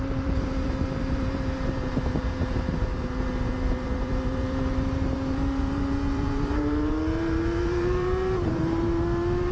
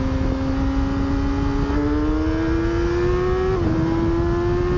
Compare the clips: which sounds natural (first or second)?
second